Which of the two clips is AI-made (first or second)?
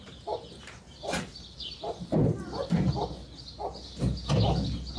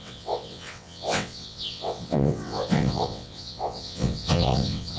second